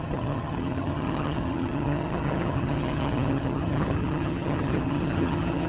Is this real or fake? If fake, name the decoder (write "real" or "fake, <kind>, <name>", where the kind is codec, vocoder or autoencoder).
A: fake, vocoder, HiFi-GAN